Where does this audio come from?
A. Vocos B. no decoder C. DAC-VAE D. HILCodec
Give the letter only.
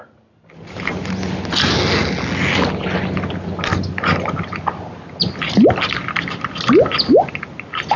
B